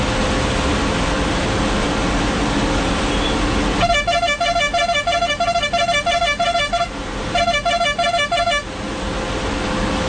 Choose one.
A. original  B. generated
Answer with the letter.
A